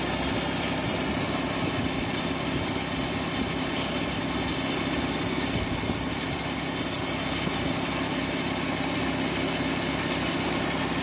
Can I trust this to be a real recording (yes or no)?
yes